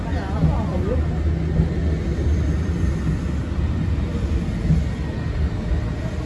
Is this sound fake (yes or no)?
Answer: no